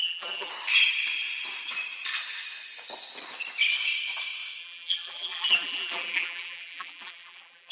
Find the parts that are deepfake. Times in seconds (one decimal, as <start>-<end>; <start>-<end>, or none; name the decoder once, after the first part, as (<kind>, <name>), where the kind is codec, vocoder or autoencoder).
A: 0.0-0.5 (vocoder, BigVGAN v2); 4.6-7.7